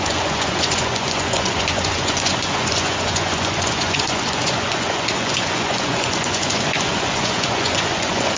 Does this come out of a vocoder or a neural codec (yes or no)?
yes